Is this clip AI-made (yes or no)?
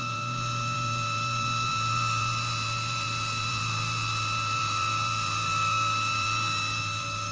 yes